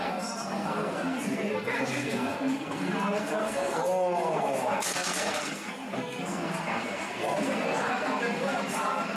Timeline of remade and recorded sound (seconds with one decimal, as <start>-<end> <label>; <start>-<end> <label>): 0.0-9.2 remade